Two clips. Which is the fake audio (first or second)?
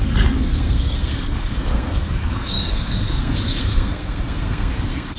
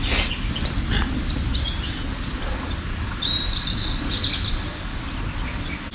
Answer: first